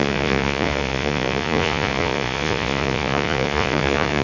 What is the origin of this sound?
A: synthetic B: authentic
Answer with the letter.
A